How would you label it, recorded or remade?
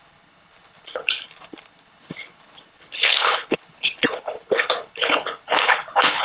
remade